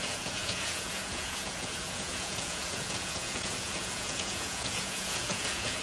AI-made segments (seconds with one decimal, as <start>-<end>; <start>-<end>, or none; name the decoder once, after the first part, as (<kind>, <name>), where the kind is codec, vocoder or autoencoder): 0.0-5.8 (vocoder, Vocos)

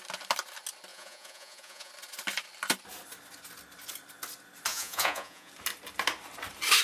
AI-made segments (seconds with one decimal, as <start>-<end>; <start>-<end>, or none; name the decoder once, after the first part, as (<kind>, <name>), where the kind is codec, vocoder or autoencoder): 0.9-1.9 (vocoder, Vocos); 4.7-5.5

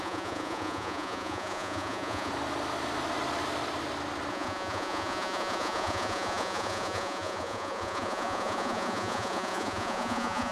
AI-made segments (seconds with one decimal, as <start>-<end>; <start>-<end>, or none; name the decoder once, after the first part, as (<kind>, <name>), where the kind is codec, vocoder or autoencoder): 0.0-2.3 (vocoder, Vocos); 4.3-10.5

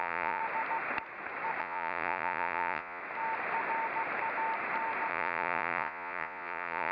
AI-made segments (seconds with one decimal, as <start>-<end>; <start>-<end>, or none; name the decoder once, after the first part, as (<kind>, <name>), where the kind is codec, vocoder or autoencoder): 0.0-0.4 (vocoder, Vocos); 1.6-3.0; 5.1-6.9